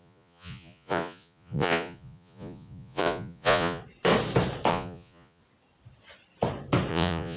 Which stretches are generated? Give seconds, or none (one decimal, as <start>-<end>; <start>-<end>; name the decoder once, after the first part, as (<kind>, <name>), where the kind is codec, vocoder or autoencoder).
0.0-3.8 (vocoder, Vocos); 4.7-5.4; 6.9-7.4